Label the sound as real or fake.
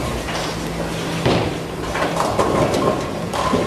real